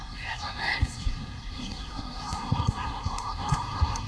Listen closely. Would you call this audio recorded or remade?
remade